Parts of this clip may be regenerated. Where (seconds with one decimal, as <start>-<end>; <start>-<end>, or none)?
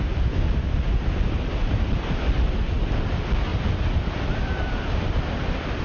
3.5-5.8